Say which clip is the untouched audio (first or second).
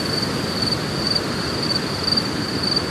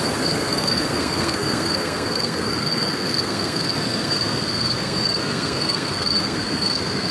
first